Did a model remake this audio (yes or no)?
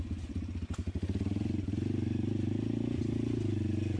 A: no